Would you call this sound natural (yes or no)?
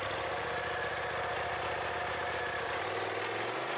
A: yes